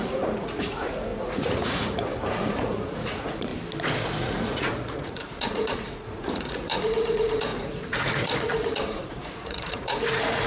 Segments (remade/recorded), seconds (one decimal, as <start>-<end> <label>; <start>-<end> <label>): 0.0-3.5 remade; 3.5-4.2 recorded; 4.2-10.5 remade